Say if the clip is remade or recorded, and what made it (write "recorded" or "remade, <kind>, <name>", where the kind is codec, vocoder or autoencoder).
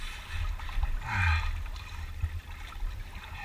recorded